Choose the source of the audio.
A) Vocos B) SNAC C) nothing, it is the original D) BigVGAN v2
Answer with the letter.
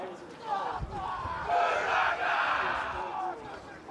C